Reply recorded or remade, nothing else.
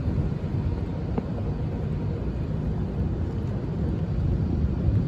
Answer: recorded